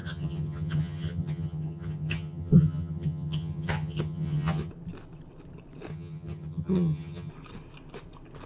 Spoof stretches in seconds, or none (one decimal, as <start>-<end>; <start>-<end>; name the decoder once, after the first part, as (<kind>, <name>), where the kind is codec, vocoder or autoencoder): 0.0-4.7 (vocoder, HiFi-GAN); 5.9-7.3